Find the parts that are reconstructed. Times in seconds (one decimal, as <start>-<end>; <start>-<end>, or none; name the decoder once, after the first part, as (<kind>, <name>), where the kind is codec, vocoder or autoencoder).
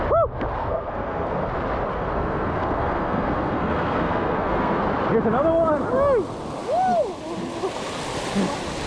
0.6-1.5 (codec, SNAC); 1.9-4.8